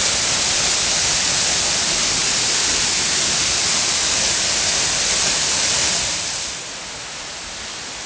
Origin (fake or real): real